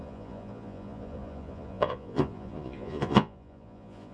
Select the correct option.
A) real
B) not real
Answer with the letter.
B